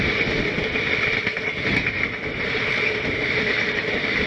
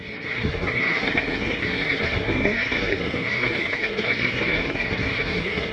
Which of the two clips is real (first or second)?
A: first